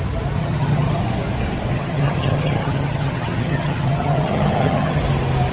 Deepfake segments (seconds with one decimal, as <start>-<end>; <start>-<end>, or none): 0.4-1.0; 1.7-5.0